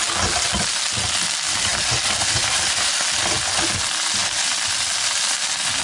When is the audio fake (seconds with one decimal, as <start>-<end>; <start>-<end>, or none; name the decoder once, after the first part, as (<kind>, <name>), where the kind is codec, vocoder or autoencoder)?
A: none

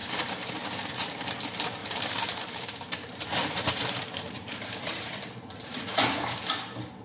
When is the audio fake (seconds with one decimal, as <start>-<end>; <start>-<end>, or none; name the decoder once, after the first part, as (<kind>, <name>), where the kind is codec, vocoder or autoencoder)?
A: 1.8-6.0 (vocoder, BigVGAN v2)

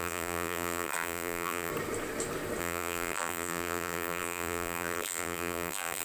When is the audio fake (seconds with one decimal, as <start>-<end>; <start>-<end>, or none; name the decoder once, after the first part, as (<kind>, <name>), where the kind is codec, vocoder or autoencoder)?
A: 0.0-1.7 (vocoder, BigVGAN v2); 2.6-6.0

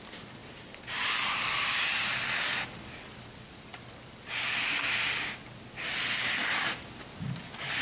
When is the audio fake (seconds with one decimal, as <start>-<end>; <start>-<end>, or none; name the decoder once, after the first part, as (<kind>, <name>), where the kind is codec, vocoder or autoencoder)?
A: 0.4-1.6 (vocoder, BigVGAN v2)

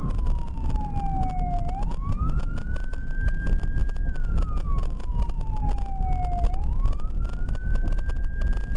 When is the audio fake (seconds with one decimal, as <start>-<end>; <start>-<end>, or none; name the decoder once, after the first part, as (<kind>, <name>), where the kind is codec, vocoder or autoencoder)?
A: none

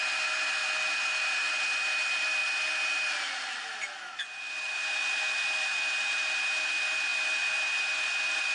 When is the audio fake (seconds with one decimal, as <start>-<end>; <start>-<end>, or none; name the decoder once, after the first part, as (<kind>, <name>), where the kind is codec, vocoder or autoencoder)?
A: none

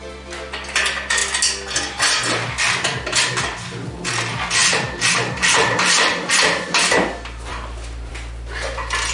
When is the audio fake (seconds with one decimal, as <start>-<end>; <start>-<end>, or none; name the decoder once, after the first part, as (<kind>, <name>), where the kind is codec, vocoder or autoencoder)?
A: 4.6-7.0 (vocoder, BigVGAN v2); 7.5-8.1